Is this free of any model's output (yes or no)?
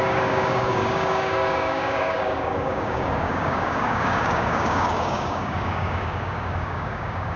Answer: no